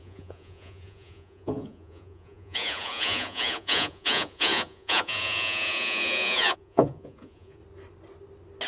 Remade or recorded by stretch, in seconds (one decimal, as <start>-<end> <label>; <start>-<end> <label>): 0.0-7.6 remade; 7.6-8.7 recorded